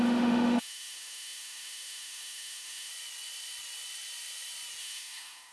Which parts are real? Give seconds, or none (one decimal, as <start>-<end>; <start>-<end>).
2.9-4.8